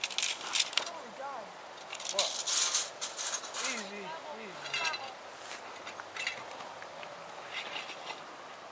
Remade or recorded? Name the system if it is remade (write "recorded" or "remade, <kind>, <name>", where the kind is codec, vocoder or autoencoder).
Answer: recorded